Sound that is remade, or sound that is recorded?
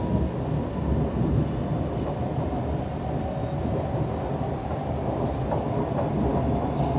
recorded